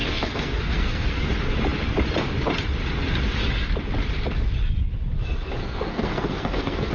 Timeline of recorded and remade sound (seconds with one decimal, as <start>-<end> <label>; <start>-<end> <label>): 0.0-1.2 remade; 1.2-5.6 recorded; 5.6-6.9 remade